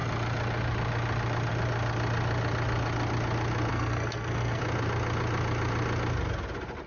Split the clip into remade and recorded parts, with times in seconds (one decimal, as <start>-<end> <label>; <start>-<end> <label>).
0.0-3.7 recorded; 3.7-4.6 remade; 4.6-6.9 recorded